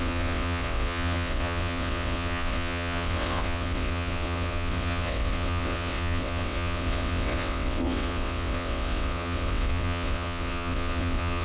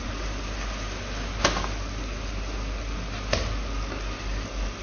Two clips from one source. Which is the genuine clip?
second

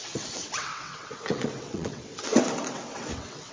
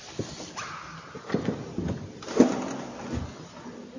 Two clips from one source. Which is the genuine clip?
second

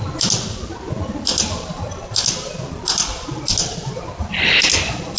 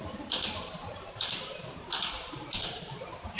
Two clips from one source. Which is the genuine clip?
first